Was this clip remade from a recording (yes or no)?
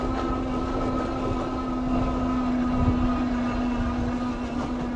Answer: no